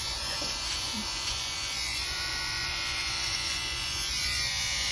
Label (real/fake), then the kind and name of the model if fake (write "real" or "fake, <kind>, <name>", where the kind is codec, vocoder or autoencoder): fake, vocoder, Vocos